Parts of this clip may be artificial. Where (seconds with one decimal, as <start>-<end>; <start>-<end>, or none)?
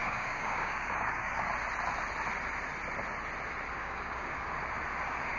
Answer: 0.0-1.5; 3.8-4.5